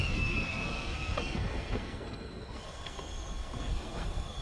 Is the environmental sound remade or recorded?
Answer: remade